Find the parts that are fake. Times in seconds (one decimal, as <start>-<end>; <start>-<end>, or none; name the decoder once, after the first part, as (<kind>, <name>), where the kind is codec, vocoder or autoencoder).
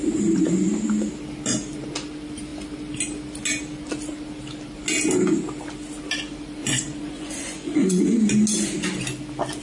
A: 6.6-8.2 (vocoder, Vocos)